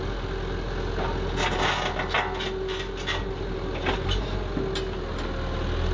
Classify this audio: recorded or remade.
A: recorded